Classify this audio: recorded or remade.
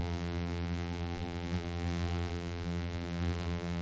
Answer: remade